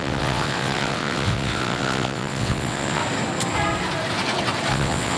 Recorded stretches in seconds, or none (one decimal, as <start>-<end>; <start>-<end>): 3.0-4.7